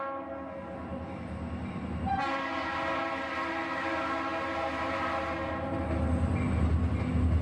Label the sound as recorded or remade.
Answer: recorded